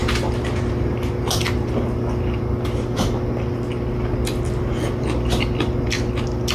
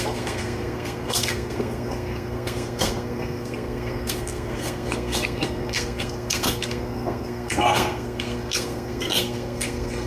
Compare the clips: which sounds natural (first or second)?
first